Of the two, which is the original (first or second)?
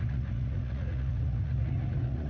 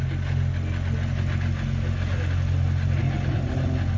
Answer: second